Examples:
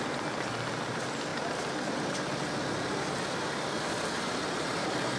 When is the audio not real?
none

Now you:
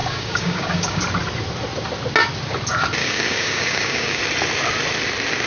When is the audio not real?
0.0-1.0; 3.0-4.2

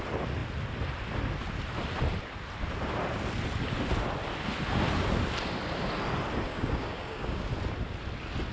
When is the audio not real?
6.5-7.5

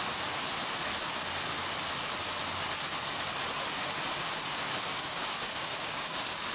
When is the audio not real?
4.9-6.5

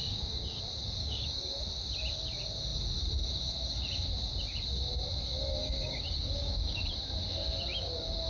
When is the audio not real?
0.0-0.6; 1.0-1.6; 5.6-6.8

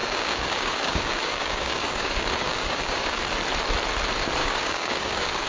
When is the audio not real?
0.0-3.2; 4.4-5.5